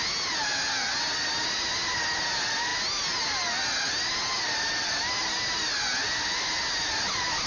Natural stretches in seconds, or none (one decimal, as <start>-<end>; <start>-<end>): 0.0-7.5